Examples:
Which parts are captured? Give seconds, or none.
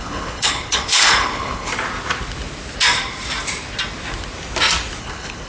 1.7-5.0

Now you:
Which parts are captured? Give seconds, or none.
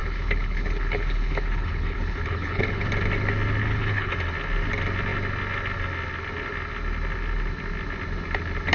2.9-3.6; 4.1-8.7